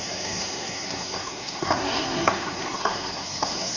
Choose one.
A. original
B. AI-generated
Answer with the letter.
B